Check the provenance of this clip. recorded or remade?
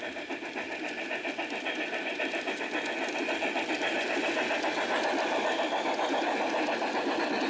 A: recorded